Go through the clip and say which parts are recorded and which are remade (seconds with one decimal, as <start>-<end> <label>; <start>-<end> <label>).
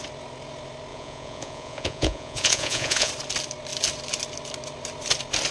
0.0-0.9 recorded; 0.9-3.1 remade; 3.1-5.5 recorded